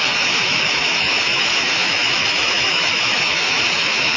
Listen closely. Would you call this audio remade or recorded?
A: remade